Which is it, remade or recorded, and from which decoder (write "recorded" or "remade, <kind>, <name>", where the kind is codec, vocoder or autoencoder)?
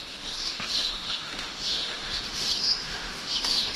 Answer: remade, autoencoder, DAC-VAE